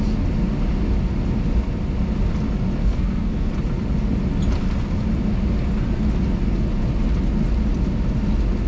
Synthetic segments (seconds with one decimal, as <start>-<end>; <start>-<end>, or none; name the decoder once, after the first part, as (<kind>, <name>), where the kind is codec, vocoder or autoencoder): 2.8-3.5 (codec, SNAC)